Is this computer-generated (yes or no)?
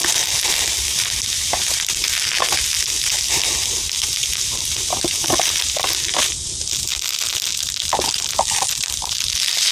no